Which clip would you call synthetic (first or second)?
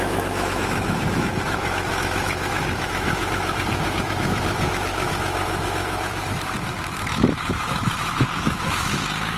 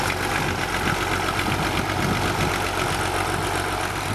first